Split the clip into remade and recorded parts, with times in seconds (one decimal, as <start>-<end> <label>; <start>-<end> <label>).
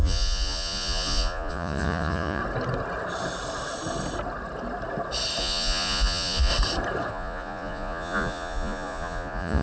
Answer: 0.0-2.4 remade; 2.4-5.4 recorded; 5.4-6.5 remade; 6.5-7.1 recorded; 7.1-9.6 remade